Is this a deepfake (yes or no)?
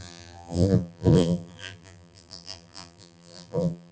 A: yes